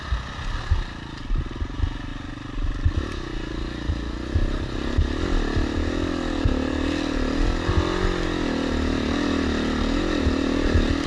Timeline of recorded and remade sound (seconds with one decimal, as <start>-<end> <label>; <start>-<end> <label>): 0.0-11.1 recorded